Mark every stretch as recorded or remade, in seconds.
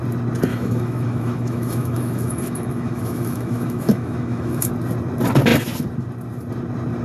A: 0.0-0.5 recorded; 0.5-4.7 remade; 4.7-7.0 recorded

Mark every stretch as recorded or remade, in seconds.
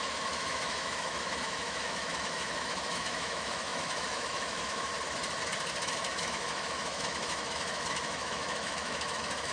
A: 0.0-4.9 remade; 4.9-5.8 recorded; 5.8-9.5 remade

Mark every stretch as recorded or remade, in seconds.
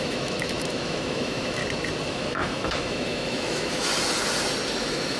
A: 0.0-1.6 remade; 1.6-2.1 recorded; 2.1-3.9 remade; 3.9-4.7 recorded; 4.7-5.2 remade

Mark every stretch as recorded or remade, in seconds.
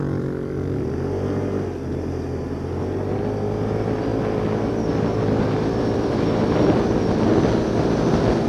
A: 0.0-8.5 recorded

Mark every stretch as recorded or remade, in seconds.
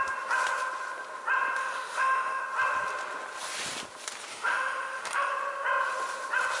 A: 0.0-1.6 recorded; 1.6-2.4 remade; 2.4-4.3 recorded; 4.3-5.3 remade; 5.3-6.6 recorded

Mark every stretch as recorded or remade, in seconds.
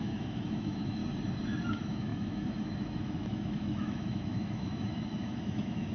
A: 0.0-1.0 remade; 1.0-1.7 recorded; 1.7-5.9 remade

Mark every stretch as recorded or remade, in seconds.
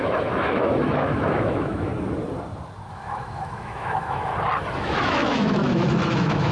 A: 0.0-1.9 remade; 1.9-2.9 recorded; 2.9-4.3 remade; 4.3-4.8 recorded; 4.8-6.5 remade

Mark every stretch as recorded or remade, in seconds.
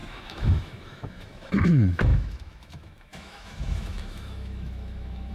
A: 0.0-5.3 remade